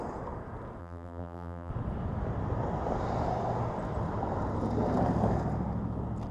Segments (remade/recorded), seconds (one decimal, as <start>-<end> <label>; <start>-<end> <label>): 0.0-0.8 recorded; 0.8-1.7 remade; 1.7-6.3 recorded